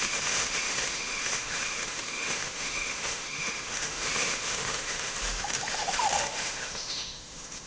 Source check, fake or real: fake